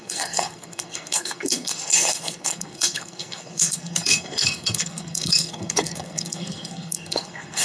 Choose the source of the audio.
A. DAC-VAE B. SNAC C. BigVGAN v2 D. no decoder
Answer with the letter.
B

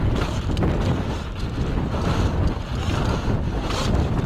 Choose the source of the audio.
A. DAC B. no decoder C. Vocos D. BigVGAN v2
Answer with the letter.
B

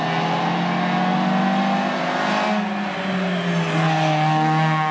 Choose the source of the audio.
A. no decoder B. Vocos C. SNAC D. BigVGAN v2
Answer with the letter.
A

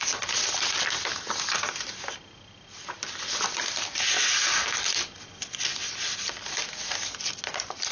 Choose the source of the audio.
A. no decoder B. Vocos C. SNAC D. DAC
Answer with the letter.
A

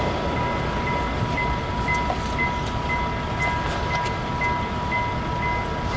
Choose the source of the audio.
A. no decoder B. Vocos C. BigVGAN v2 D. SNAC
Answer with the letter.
A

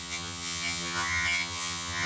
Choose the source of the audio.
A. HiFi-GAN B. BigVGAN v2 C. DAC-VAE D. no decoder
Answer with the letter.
A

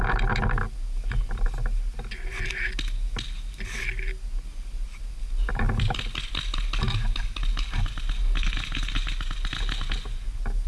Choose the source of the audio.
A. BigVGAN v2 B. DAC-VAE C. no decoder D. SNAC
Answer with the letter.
C